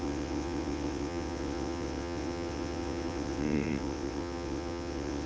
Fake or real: fake